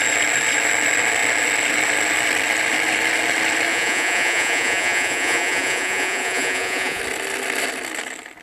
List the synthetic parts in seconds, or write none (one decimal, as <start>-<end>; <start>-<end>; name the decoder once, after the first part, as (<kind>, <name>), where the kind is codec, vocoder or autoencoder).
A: 3.7-7.0 (vocoder, Vocos)